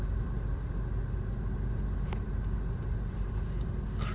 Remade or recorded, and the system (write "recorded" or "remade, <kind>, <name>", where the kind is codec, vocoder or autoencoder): recorded